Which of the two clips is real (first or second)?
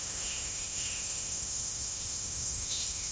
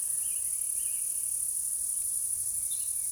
second